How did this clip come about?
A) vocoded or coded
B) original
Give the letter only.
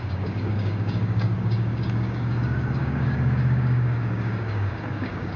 A